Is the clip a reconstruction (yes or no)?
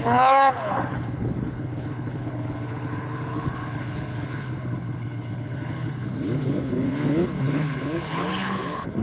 yes